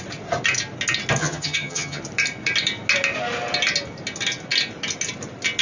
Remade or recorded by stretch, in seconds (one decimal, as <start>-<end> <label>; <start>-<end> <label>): 0.0-1.2 recorded; 1.2-2.0 remade; 2.0-5.6 recorded